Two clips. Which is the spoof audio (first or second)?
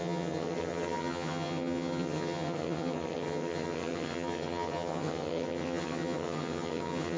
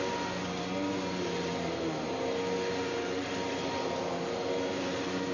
first